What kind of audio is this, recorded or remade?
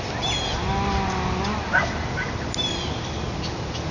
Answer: recorded